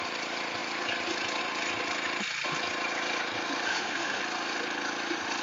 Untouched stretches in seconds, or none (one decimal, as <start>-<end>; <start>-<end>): 0.0-3.7; 4.2-5.4